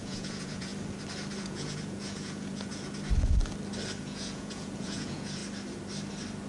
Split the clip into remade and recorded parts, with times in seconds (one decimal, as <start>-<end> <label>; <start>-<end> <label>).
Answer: 0.0-0.7 remade; 0.7-1.4 recorded; 1.4-2.7 remade; 2.7-4.0 recorded; 4.0-5.4 remade; 5.4-6.5 recorded